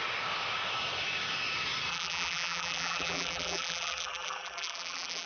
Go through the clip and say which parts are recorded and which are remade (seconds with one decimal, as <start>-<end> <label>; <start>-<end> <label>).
0.0-1.9 recorded; 1.9-5.3 remade